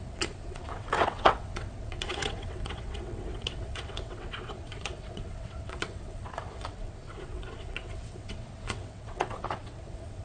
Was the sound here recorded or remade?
remade